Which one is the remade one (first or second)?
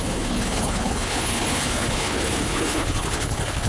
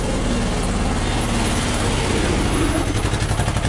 first